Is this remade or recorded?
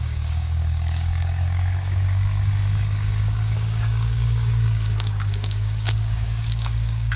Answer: remade